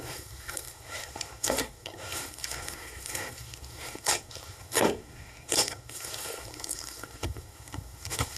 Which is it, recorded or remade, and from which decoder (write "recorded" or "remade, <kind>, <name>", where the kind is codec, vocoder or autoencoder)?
remade, codec, SNAC